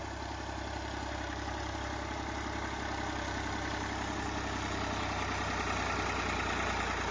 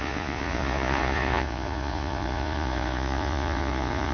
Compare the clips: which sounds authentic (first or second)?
first